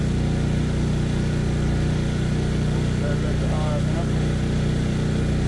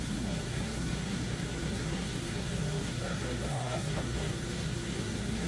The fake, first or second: second